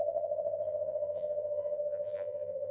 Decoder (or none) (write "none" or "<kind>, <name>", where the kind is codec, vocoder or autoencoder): vocoder, BigVGAN v2